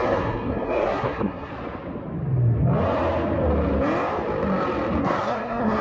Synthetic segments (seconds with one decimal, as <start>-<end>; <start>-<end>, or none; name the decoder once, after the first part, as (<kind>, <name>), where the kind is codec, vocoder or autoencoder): 0.0-1.5 (codec, SNAC); 5.0-5.8